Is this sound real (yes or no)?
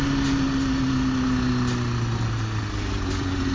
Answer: yes